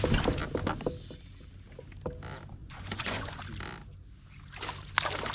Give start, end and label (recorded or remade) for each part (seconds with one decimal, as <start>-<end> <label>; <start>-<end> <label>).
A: 0.0-2.6 recorded; 2.6-3.4 remade; 3.4-5.3 recorded